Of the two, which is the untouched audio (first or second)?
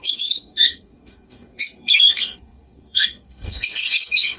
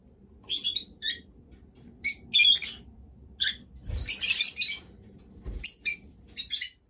second